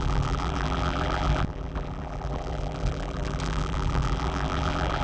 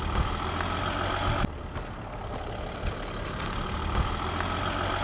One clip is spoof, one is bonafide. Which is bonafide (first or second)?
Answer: second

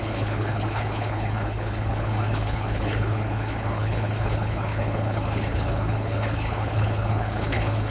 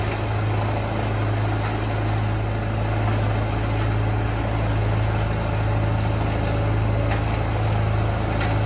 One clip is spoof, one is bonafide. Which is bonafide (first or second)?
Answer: second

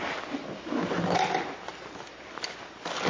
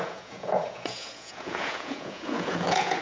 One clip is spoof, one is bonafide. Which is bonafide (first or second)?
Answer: first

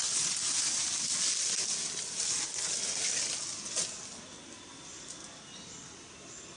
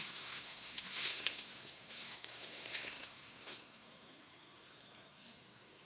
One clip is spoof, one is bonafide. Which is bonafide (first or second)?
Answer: first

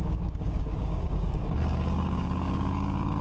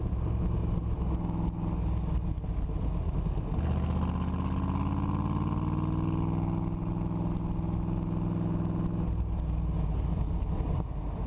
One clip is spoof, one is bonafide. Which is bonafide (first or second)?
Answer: second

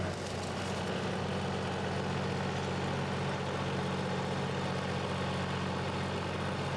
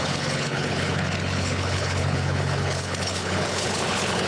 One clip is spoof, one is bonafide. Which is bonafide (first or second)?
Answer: first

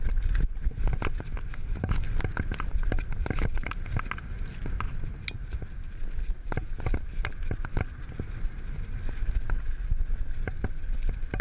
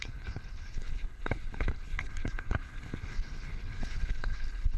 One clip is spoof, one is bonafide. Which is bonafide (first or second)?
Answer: first